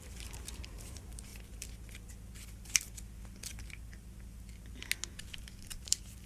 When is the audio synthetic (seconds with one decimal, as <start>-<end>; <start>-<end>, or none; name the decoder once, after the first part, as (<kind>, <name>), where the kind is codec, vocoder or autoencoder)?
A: 0.0-1.3 (vocoder, BigVGAN v2); 5.1-6.3